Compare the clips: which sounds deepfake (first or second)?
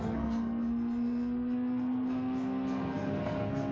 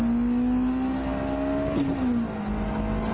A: first